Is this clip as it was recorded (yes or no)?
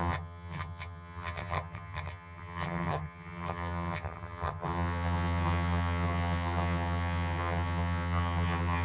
no